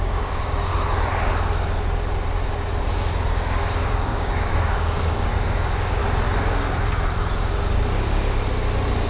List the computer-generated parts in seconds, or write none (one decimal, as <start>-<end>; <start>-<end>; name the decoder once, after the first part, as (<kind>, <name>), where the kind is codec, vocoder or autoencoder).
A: 0.0-0.7 (codec, DAC); 3.3-6.0